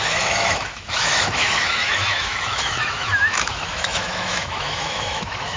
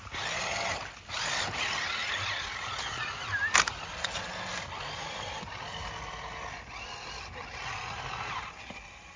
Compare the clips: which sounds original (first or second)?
second